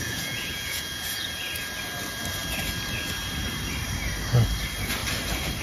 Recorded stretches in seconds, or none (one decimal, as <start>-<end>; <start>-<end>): 1.4-5.6